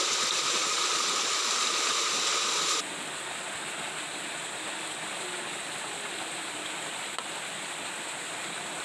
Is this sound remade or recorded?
recorded